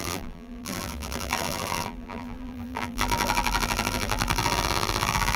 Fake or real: fake